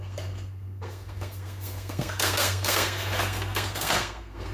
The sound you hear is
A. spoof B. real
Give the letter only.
A